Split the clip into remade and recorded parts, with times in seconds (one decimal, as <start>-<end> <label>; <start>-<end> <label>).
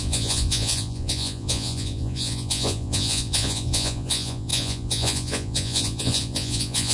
0.0-6.9 remade